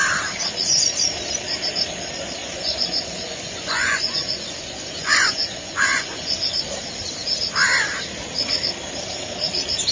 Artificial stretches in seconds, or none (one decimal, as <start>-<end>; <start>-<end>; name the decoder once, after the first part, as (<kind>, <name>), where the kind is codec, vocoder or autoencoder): 2.4-6.5 (vocoder, Vocos)